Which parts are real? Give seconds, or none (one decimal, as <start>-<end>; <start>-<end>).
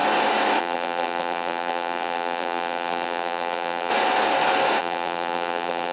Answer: 0.0-0.6; 3.9-4.8